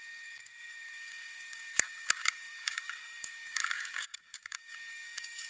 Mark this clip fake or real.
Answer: fake